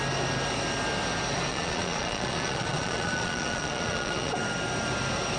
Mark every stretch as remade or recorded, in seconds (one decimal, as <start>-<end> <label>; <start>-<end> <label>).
0.0-1.5 recorded; 1.5-4.3 remade; 4.3-5.4 recorded